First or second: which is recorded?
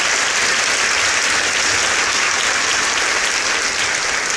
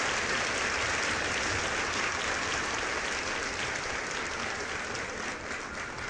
first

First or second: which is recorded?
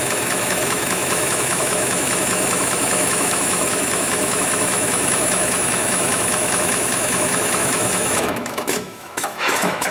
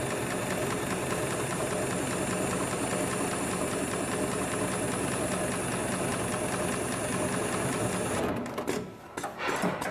second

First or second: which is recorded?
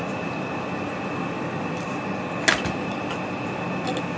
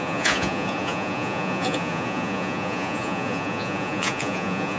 first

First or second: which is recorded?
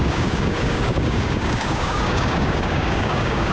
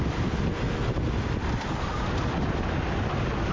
second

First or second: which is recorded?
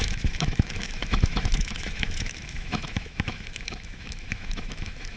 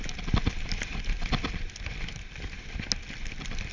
second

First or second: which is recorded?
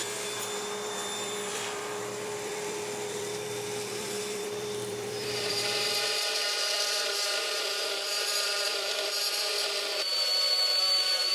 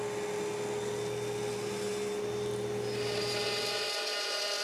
second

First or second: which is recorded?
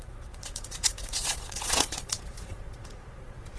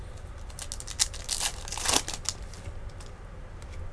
second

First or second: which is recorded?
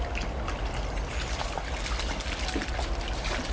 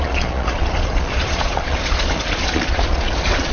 first